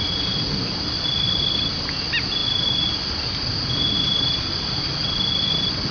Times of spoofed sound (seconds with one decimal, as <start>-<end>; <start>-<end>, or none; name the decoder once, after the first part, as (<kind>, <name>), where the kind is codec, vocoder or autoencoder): none